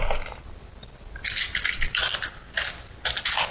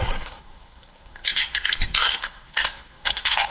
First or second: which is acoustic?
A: first